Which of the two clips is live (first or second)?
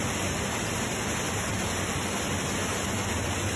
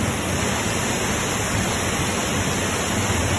first